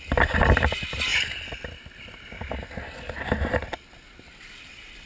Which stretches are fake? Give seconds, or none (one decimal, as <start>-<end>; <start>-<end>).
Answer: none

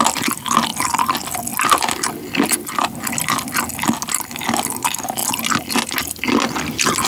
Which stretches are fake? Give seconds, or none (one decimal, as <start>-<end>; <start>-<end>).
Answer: none

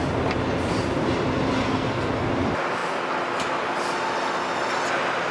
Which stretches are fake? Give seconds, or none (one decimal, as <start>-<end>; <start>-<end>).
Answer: 1.6-2.1

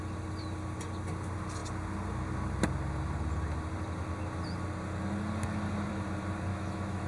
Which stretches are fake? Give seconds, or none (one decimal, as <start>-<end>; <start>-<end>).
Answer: 6.5-7.1

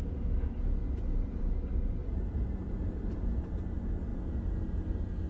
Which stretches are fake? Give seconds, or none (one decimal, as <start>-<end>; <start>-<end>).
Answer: 0.8-1.4; 2.0-3.0

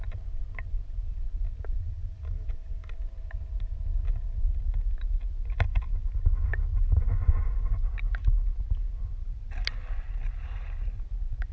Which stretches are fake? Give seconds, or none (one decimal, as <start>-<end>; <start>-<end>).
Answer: none